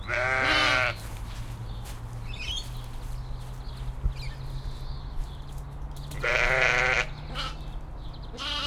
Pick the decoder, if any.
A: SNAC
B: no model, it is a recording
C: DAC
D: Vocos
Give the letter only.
B